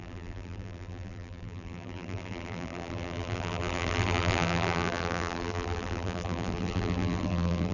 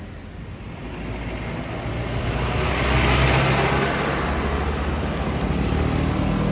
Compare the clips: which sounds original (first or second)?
second